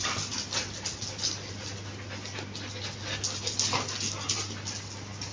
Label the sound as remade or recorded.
recorded